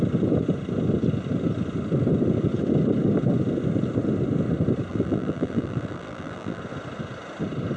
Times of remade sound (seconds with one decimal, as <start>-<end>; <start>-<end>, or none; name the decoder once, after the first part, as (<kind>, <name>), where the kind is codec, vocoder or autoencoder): 4.9-6.6 (vocoder, BigVGAN v2)